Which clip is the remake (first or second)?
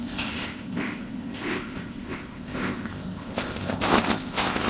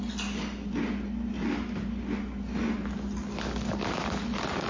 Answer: first